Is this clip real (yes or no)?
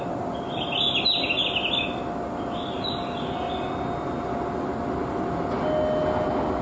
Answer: yes